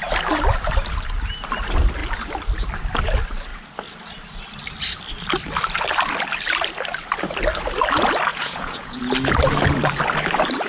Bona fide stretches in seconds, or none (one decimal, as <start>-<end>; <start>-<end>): 0.0-8.3; 9.0-10.7